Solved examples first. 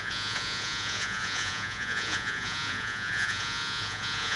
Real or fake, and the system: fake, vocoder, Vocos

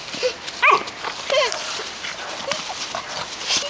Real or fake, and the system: real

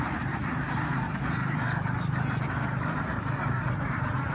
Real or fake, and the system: fake, vocoder, BigVGAN v2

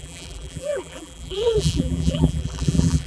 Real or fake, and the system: fake, vocoder, BigVGAN v2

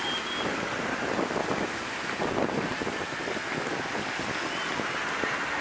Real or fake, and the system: real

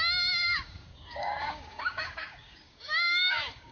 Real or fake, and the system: fake, codec, DAC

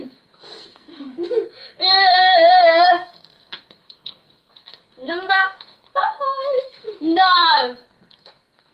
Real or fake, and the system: fake, codec, SNAC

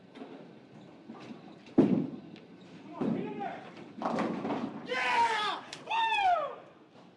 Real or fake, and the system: real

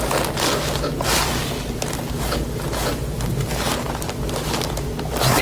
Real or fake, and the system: real